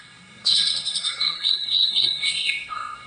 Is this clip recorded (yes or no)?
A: no